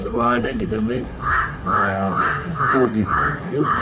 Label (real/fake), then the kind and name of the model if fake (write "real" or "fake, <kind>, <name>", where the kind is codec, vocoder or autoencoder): fake, codec, SNAC